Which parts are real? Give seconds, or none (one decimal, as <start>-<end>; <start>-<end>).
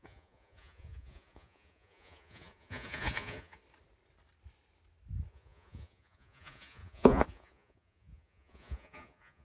3.6-5.3